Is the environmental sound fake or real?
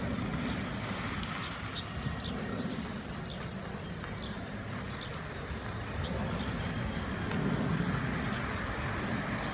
real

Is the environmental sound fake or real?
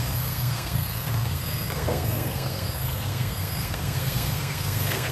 fake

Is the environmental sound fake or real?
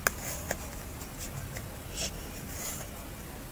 real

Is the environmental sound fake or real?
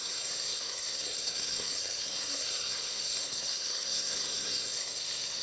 fake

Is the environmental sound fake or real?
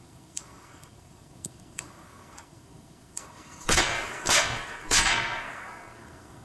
fake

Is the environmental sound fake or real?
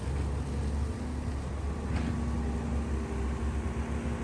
real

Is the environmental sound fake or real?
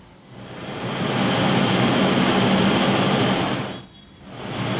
real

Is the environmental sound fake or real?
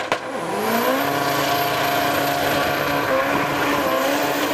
real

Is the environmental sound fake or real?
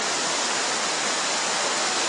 real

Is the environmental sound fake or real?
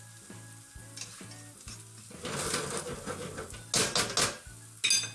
real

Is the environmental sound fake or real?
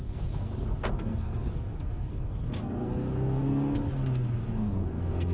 fake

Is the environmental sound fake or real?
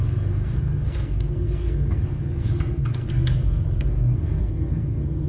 fake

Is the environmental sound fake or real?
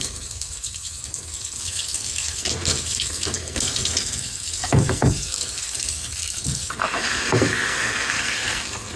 fake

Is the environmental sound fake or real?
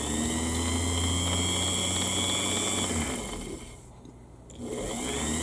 real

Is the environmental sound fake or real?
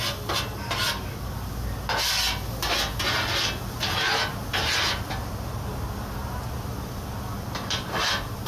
real